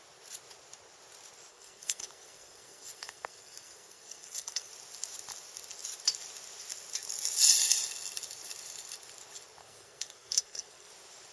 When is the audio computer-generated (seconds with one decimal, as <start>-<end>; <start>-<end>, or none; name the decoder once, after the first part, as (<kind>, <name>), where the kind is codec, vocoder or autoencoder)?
1.5-4.7 (codec, SNAC); 9.6-10.9